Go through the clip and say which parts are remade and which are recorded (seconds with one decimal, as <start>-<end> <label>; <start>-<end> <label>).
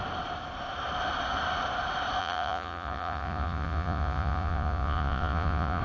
0.0-2.2 recorded; 2.2-5.8 remade